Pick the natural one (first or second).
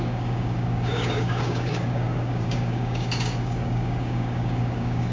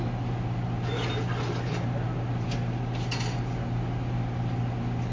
second